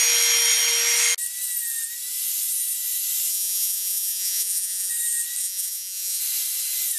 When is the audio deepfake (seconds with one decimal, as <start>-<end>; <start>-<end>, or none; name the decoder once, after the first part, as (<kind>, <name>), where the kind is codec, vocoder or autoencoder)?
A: 3.3-4.9 (vocoder, Vocos); 5.4-6.2